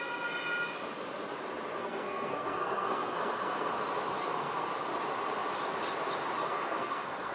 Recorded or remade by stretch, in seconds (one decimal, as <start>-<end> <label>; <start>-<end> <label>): 0.0-1.8 recorded; 1.8-3.7 remade; 3.7-4.2 recorded; 4.2-4.7 remade; 4.7-6.4 recorded; 6.4-7.3 remade